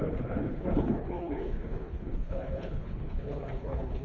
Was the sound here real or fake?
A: fake